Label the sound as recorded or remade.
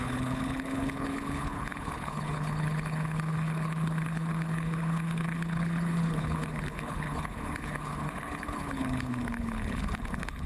remade